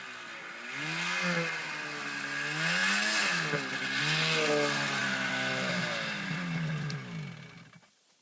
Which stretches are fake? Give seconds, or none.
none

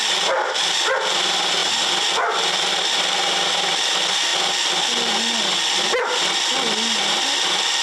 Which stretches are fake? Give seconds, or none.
none

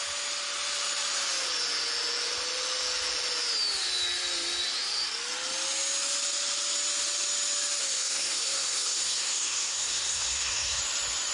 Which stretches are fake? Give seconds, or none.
7.8-10.8 (codec, SNAC)

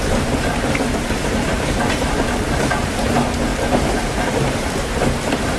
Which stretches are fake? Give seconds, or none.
1.2-3.1 (vocoder, BigVGAN v2); 3.5-4.6

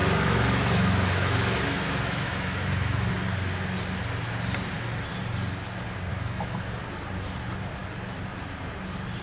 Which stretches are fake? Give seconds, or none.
0.0-3.1 (autoencoder, DAC-VAE); 6.1-6.8